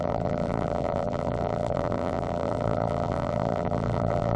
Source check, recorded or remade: remade